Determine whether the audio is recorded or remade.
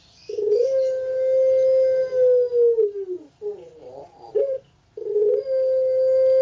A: recorded